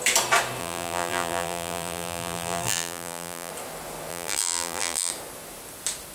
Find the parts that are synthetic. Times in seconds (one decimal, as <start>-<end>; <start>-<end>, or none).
0.6-3.5; 4.1-5.1